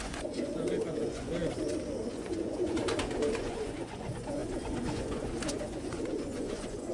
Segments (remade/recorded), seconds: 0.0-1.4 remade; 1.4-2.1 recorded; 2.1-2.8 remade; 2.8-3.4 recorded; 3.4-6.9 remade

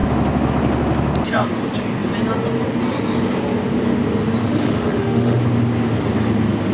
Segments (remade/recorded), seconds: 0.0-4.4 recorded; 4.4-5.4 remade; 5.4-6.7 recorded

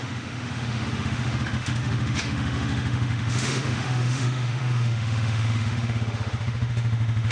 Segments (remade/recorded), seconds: 0.0-7.3 remade

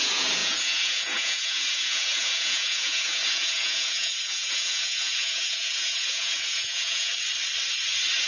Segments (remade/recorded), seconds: 0.0-7.1 remade; 7.1-8.3 recorded

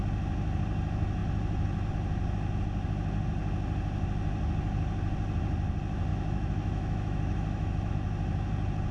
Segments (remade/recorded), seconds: 0.0-6.1 recorded; 6.1-7.9 remade; 7.9-8.9 recorded

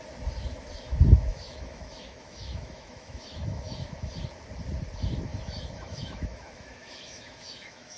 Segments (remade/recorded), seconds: 0.0-1.3 recorded; 1.3-4.1 remade; 4.1-5.3 recorded; 5.3-8.0 remade

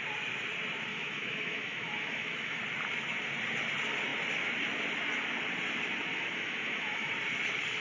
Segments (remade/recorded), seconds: 0.0-0.9 recorded; 0.9-2.6 remade; 2.6-6.1 recorded; 6.1-7.1 remade; 7.1-7.8 recorded

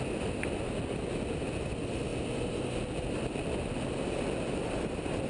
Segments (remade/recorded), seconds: 0.0-2.1 recorded; 2.1-5.3 remade